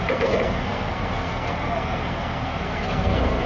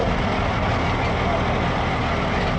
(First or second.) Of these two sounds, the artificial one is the first